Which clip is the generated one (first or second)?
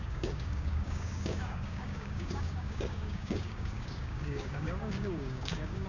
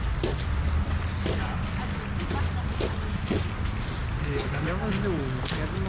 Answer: first